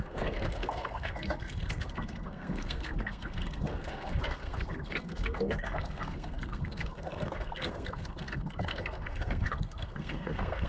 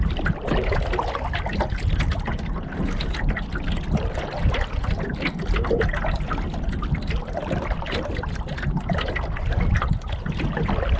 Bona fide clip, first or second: second